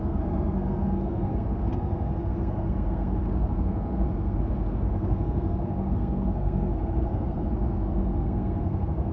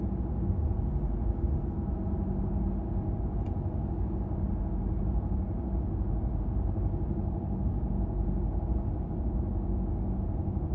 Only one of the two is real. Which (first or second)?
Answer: second